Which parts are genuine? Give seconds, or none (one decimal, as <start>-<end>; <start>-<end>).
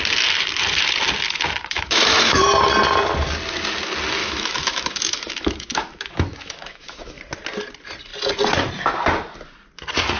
0.0-1.6; 2.4-4.2; 7.2-10.2